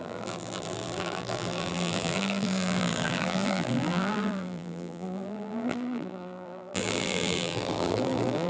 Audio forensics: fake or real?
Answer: fake